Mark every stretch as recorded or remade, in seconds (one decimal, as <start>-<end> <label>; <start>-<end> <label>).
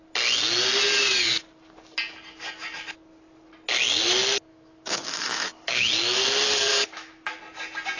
0.0-4.5 recorded; 4.5-5.9 remade; 5.9-6.7 recorded; 6.7-7.4 remade; 7.4-8.0 recorded